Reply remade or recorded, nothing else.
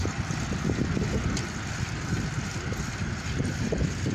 recorded